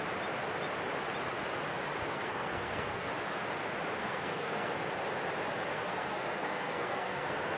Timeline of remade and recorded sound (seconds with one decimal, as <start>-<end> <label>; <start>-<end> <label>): 0.0-2.1 recorded; 2.1-3.1 remade; 3.1-4.0 recorded; 4.0-4.7 remade; 4.7-5.7 recorded; 5.7-7.6 remade